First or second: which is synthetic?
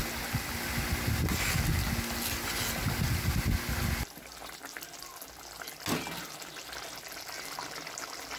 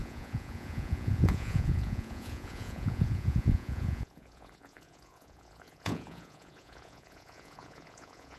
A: second